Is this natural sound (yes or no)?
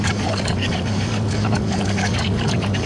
no